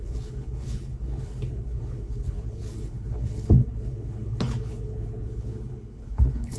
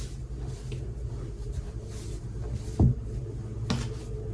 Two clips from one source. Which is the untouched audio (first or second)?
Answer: second